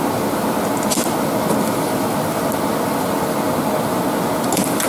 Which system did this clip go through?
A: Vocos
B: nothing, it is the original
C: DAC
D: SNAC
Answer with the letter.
B